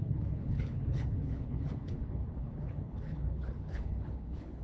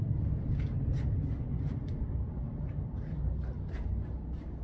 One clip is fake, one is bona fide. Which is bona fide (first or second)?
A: second